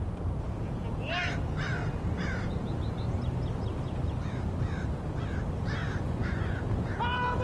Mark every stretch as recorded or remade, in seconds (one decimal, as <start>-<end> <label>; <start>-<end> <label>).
0.0-5.8 recorded; 5.8-6.6 remade; 6.6-7.4 recorded